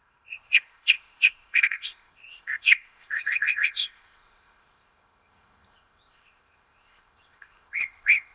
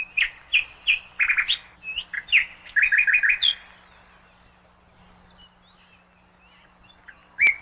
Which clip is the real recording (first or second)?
second